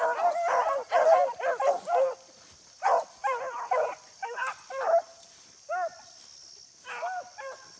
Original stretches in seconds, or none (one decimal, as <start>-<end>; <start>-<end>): 0.0-7.8